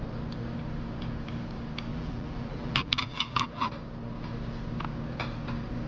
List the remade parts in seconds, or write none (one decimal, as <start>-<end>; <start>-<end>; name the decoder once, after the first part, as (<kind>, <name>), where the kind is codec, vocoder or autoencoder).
1.9-3.7 (vocoder, BigVGAN v2)